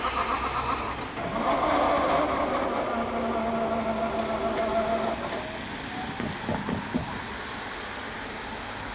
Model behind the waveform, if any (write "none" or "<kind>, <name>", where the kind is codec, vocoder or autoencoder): none